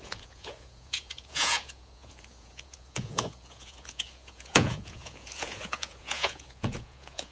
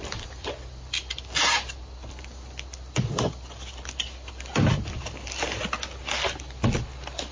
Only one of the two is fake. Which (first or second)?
first